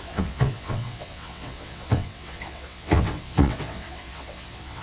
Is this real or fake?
fake